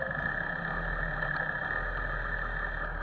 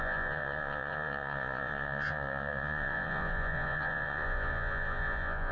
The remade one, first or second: second